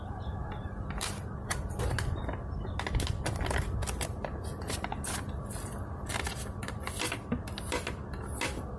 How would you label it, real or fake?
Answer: real